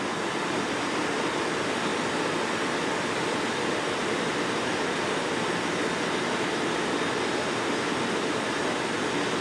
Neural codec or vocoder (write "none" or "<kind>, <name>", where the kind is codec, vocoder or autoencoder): none